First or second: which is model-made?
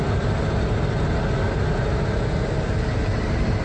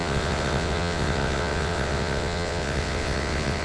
second